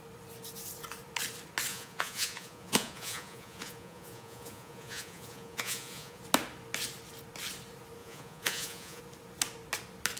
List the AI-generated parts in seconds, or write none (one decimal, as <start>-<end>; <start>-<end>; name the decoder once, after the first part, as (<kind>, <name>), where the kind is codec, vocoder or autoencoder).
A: 1.7-6.2 (vocoder, Vocos); 8.0-9.0